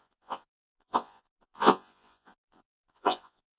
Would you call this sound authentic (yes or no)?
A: no